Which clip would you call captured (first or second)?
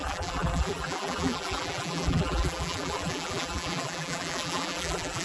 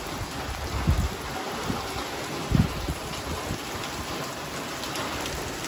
second